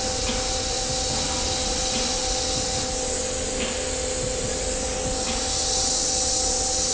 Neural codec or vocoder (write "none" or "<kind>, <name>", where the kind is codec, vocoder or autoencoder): none